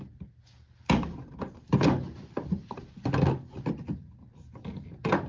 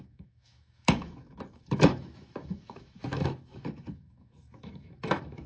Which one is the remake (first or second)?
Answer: second